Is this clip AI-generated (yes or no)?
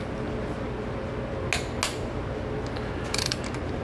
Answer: no